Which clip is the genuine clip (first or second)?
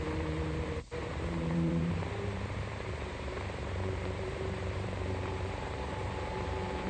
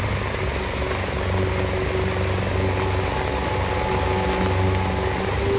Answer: second